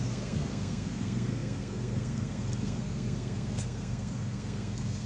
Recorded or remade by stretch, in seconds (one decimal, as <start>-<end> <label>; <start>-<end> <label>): 0.0-5.1 remade